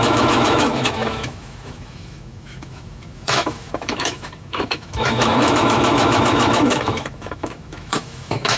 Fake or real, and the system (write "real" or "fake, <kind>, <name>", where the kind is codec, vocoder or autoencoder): fake, autoencoder, DAC-VAE